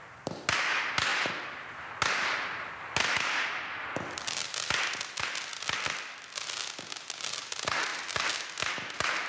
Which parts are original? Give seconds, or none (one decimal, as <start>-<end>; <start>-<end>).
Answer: 0.0-9.3